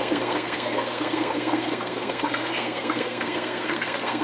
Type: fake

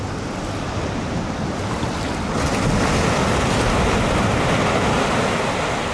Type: real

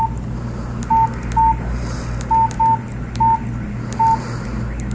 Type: real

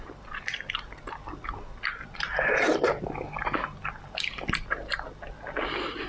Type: real